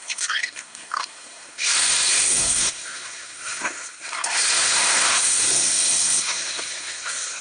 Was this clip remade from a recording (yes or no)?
yes